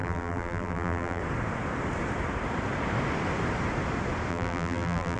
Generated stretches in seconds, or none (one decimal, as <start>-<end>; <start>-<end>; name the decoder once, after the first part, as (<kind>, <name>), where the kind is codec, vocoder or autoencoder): 0.0-1.2 (vocoder, BigVGAN v2); 4.3-5.2